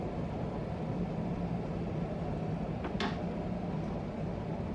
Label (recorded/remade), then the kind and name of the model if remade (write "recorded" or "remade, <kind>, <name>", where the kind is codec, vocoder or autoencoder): recorded